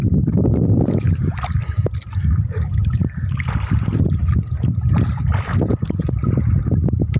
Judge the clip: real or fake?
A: real